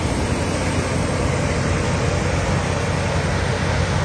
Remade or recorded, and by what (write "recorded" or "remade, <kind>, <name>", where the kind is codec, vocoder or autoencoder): recorded